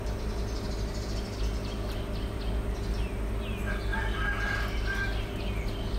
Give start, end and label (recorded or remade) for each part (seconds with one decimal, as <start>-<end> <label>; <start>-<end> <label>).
0.0-6.0 recorded